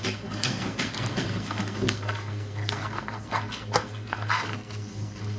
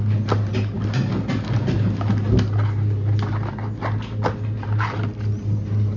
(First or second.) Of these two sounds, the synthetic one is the first